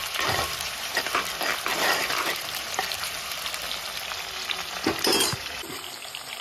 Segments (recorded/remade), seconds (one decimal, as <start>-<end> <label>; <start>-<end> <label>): 0.0-1.1 remade; 1.1-1.7 recorded; 1.7-3.1 remade; 3.1-5.1 recorded; 5.1-5.6 remade; 5.6-6.4 recorded